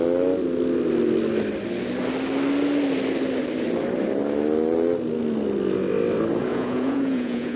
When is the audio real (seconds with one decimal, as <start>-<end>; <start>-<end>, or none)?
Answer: 0.0-6.5